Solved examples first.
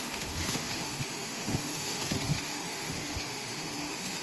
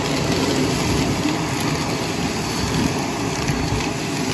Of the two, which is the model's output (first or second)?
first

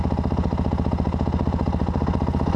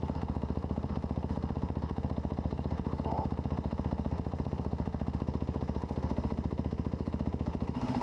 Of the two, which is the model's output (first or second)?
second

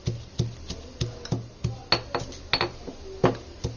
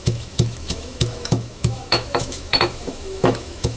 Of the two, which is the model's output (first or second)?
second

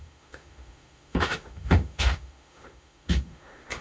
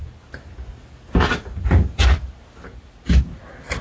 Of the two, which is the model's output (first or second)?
first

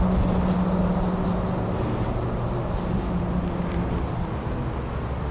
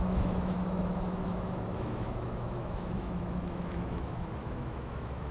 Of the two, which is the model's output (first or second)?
second